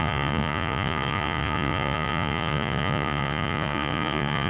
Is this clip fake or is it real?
fake